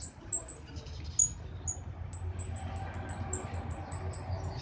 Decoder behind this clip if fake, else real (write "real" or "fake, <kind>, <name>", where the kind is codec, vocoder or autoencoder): real